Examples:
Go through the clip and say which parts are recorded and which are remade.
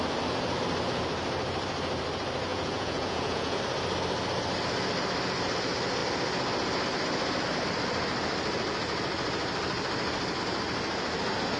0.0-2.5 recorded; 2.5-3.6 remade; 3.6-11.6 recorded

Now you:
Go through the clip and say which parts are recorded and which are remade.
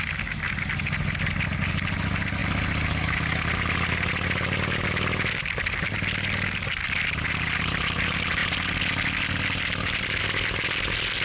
0.0-11.2 recorded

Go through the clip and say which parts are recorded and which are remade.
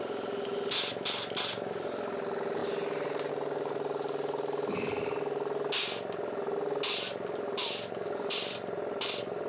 0.0-9.5 recorded